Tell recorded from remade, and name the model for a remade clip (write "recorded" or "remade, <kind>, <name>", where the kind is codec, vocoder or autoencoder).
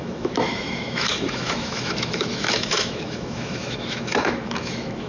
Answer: remade, autoencoder, DAC-VAE